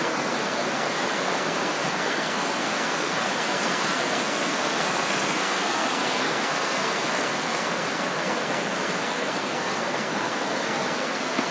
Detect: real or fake fake